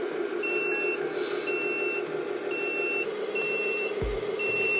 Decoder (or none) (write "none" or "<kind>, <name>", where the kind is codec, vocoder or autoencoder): none